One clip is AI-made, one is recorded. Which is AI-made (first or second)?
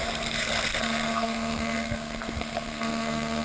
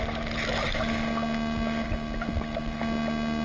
first